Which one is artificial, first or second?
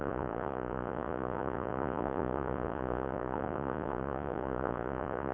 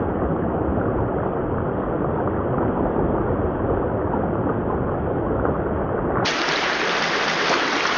first